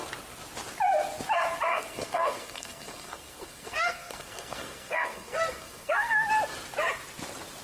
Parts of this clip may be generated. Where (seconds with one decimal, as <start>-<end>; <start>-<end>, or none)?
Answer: 1.7-6.3